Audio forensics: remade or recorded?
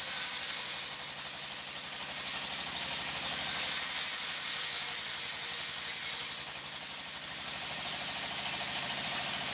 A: recorded